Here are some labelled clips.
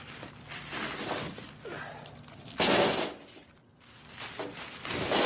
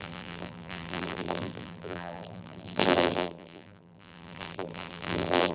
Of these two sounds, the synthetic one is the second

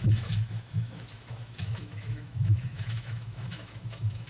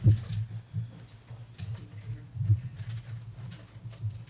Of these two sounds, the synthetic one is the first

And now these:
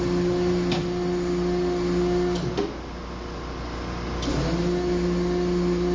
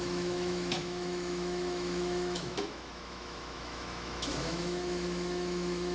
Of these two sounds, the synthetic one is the second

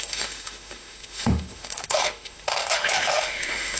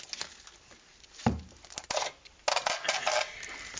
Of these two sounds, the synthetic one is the first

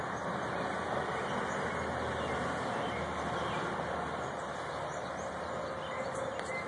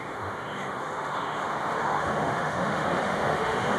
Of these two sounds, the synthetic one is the second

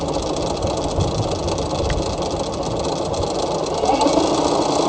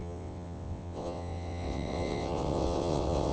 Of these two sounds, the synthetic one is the second